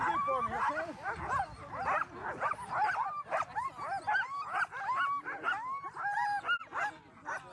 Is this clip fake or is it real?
real